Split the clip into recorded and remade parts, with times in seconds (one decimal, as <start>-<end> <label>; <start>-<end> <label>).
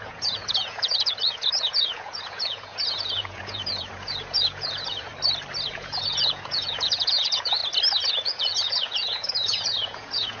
0.0-5.1 remade; 5.1-5.7 recorded; 5.7-7.6 remade; 7.6-8.1 recorded; 8.1-10.4 remade